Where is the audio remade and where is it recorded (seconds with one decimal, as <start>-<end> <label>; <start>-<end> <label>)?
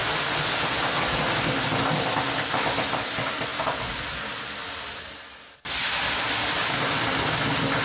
0.0-7.8 recorded